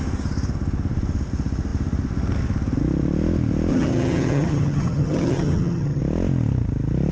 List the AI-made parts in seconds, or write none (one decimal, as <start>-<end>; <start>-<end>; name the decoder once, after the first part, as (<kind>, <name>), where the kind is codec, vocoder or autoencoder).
3.7-6.0 (vocoder, HiFi-GAN)